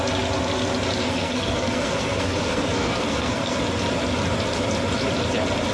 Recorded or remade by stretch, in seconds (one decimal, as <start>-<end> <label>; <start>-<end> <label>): 0.0-1.0 recorded; 1.0-3.6 remade; 3.6-5.7 recorded